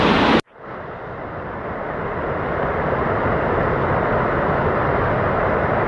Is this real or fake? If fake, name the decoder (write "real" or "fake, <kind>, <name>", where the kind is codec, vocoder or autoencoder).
real